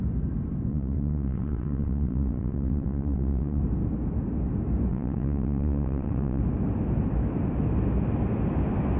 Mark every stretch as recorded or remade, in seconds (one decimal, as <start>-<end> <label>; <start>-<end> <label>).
0.0-0.7 recorded; 0.7-3.6 remade; 3.6-4.9 recorded; 4.9-6.4 remade; 6.4-9.0 recorded